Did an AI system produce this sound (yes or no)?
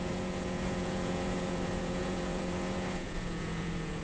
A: yes